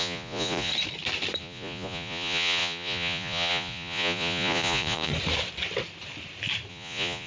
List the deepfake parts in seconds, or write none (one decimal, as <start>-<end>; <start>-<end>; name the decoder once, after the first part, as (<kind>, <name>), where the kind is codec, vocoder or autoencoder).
0.0-0.7 (vocoder, Vocos); 1.4-5.1; 6.7-7.3